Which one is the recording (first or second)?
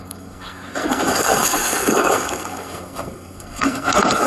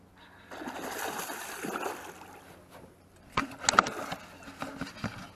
second